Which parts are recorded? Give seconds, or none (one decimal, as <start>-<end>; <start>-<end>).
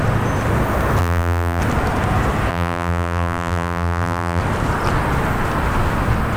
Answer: 0.0-1.0; 1.6-2.5; 4.4-6.4